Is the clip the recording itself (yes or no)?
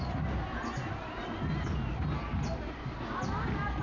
yes